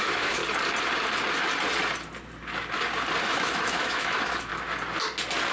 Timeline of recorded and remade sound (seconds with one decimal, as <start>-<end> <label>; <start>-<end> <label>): 0.0-0.4 remade; 0.4-3.2 recorded; 3.2-4.5 remade; 4.5-5.5 recorded